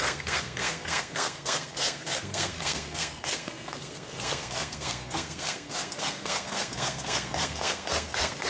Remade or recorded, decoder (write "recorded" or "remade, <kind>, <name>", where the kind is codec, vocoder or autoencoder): remade, codec, SNAC